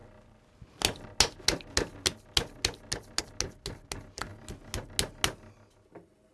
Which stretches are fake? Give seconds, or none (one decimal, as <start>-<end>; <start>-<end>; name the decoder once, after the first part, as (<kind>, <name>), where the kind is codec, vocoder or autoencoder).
none